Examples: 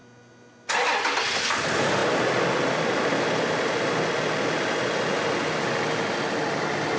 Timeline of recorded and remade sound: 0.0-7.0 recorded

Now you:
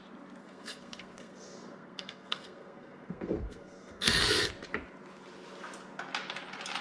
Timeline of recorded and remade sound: 0.0-0.4 recorded; 0.4-4.5 remade; 4.5-6.8 recorded

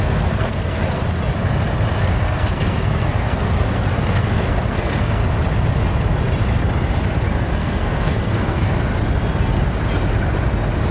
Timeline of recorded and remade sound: 0.0-1.0 remade; 1.0-2.0 recorded; 2.0-5.2 remade; 5.2-7.3 recorded; 7.3-8.9 remade; 8.9-10.9 recorded

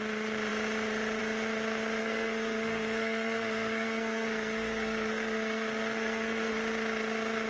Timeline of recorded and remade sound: 0.0-2.0 recorded; 2.0-6.5 remade; 6.5-7.5 recorded